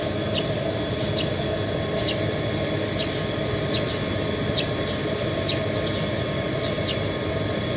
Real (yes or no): yes